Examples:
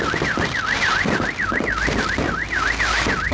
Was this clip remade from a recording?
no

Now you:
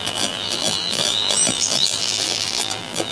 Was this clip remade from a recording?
yes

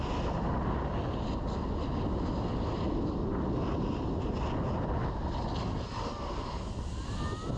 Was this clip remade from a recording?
no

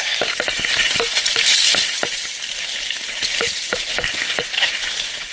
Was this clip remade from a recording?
no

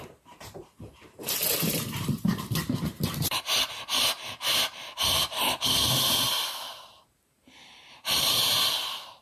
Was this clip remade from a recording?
yes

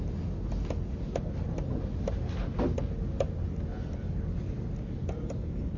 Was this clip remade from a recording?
no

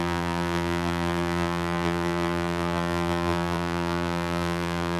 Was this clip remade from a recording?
yes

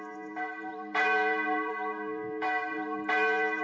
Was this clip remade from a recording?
yes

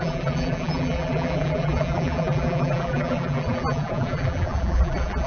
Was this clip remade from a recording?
yes